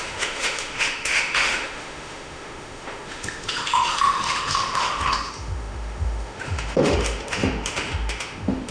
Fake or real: fake